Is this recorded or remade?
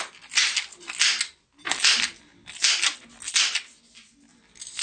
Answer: recorded